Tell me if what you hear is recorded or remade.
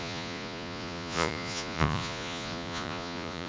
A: remade